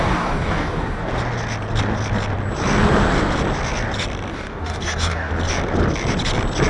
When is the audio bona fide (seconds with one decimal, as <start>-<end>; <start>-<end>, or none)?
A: 1.1-4.3; 5.3-6.7